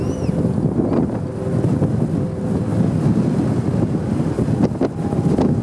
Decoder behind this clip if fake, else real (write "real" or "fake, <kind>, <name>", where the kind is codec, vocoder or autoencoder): real